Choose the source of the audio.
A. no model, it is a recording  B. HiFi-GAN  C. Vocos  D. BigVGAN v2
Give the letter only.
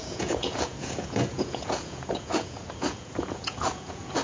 C